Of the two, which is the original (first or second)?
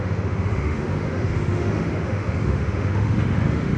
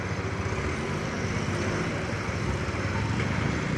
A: second